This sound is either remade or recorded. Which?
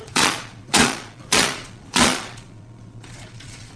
remade